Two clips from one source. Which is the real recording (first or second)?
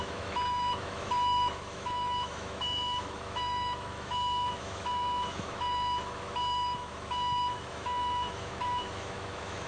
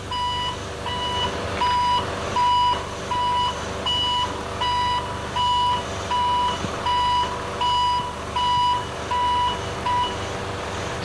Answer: second